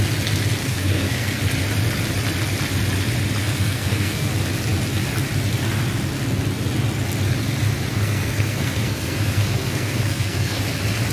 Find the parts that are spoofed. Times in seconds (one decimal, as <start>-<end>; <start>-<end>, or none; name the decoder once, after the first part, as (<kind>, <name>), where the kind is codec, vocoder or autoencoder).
0.6-1.4 (codec, SNAC); 3.4-4.3; 7.9-10.6